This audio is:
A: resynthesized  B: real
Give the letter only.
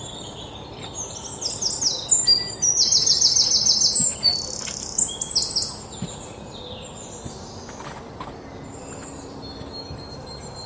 B